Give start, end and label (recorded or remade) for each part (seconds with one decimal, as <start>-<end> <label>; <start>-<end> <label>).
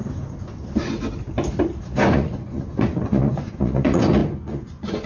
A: 0.0-2.1 recorded; 2.1-5.1 remade